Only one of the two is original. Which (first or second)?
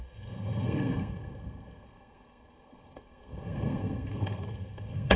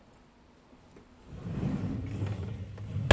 second